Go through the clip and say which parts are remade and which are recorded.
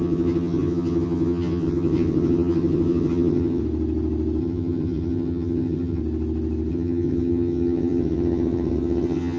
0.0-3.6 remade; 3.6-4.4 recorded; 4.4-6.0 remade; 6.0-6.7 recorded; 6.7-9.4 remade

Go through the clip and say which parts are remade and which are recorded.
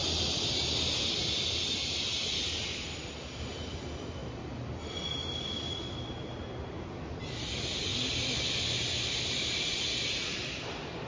0.0-11.1 recorded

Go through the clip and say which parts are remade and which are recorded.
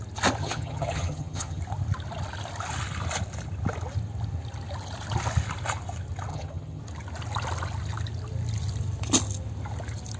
0.0-0.4 recorded; 0.4-1.6 remade; 1.6-6.3 recorded; 6.3-6.8 remade; 6.8-10.2 recorded